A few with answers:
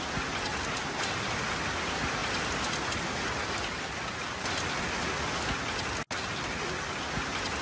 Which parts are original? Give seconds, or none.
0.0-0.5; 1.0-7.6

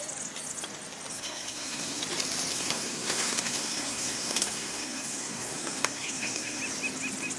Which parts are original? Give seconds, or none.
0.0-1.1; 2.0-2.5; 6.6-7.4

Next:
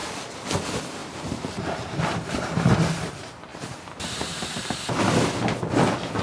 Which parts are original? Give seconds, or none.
0.0-1.0; 4.7-6.2

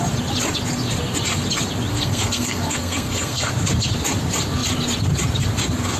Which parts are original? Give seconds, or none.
0.0-1.9; 3.5-6.0

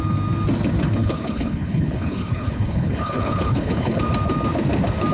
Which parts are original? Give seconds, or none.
0.0-1.0; 4.0-5.1

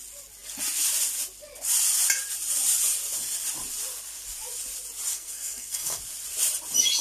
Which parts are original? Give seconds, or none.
0.0-5.1; 6.0-7.0

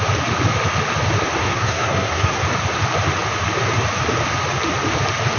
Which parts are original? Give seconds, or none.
0.0-1.4; 2.4-5.4